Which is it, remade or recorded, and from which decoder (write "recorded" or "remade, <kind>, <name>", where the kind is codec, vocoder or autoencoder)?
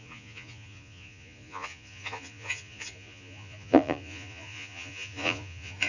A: remade, vocoder, Vocos